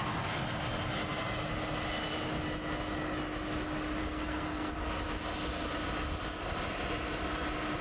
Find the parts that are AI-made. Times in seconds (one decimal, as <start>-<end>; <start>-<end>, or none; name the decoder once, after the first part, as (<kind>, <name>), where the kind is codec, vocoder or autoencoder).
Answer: 4.0-4.7 (codec, SNAC)